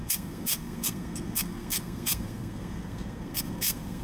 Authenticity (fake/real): fake